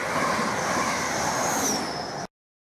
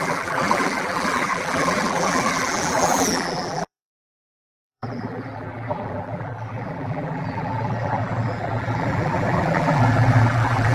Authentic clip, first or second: first